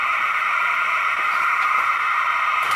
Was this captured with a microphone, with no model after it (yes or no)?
no